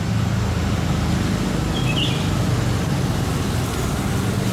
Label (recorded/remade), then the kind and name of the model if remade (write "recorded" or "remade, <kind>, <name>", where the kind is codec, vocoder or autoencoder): recorded